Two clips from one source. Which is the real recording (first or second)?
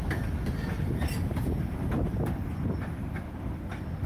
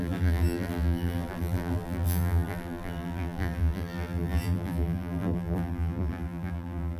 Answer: first